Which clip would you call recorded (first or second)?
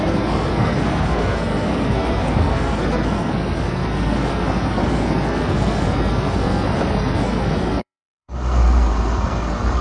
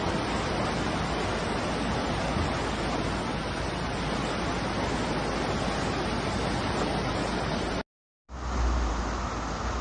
second